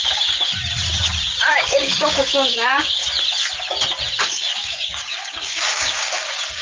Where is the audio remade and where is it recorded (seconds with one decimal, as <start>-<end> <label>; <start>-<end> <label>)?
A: 0.0-0.4 remade; 0.4-1.5 recorded; 1.5-3.0 remade; 3.0-4.2 recorded; 4.2-6.6 remade

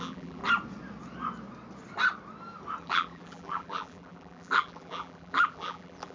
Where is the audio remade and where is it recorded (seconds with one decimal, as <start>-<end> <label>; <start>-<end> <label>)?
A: 0.0-0.4 remade; 0.4-2.8 recorded; 2.8-6.1 remade

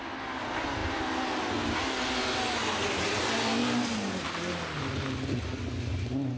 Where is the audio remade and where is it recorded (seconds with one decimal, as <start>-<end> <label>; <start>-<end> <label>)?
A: 0.0-6.4 recorded

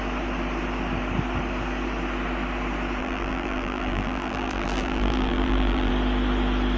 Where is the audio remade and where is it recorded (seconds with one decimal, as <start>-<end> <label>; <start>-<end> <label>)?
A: 0.0-3.0 recorded; 3.0-5.9 remade; 5.9-6.8 recorded

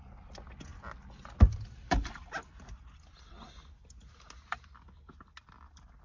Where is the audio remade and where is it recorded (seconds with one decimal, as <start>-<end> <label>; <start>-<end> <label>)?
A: 0.0-6.0 recorded

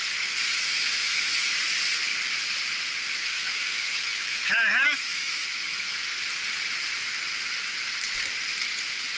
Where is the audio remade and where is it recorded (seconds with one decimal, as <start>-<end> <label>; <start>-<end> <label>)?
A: 0.0-1.5 remade; 1.5-3.2 recorded; 3.2-6.1 remade; 6.1-9.2 recorded